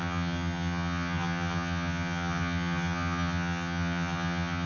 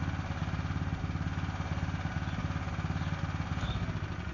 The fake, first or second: first